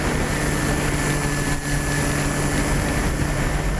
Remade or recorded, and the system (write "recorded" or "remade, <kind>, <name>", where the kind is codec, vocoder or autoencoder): recorded